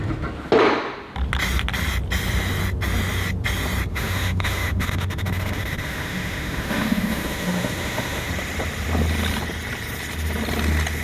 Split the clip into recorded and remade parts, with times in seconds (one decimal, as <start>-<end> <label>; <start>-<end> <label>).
0.0-3.9 recorded; 3.9-8.3 remade; 8.3-11.0 recorded